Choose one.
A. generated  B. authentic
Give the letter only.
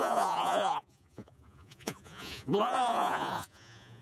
A